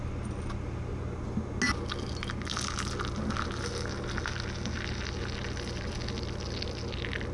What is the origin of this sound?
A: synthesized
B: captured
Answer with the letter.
B